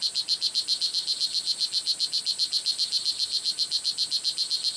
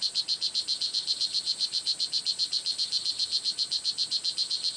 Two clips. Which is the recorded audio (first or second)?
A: first